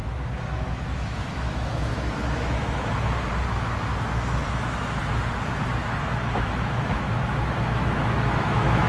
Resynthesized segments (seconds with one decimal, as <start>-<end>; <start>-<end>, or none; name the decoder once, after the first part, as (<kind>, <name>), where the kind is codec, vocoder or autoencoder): 0.0-3.3 (autoencoder, DAC-VAE); 3.9-5.0; 5.8-8.9